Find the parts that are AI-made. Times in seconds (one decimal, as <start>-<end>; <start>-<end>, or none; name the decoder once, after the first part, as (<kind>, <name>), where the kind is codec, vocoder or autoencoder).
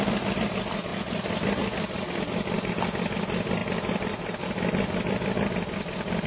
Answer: none